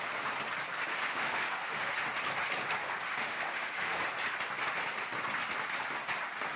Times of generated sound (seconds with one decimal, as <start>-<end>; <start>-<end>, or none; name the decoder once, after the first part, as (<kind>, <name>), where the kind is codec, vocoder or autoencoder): 0.9-1.9 (autoencoder, DAC-VAE); 2.8-4.0